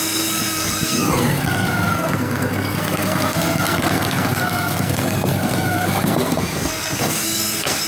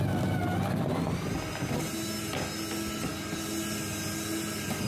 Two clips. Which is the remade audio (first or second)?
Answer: first